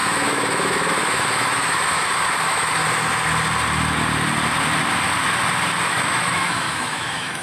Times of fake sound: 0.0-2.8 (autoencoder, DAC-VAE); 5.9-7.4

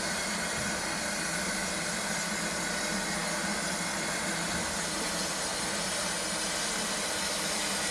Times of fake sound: none